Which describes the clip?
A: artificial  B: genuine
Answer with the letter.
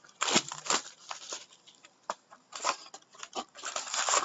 B